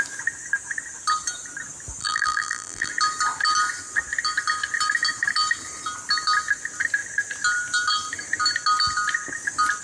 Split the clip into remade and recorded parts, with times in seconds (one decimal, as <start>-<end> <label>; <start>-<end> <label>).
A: 0.0-2.0 recorded; 2.0-2.9 remade; 2.9-9.8 recorded